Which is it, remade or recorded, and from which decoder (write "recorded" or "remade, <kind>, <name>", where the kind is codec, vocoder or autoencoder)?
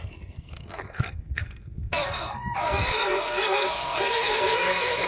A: remade, codec, SNAC